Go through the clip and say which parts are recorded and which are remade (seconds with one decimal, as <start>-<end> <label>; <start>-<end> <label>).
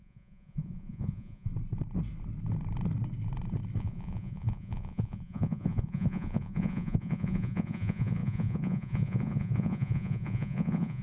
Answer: 0.0-1.5 remade; 1.5-3.8 recorded; 3.8-11.0 remade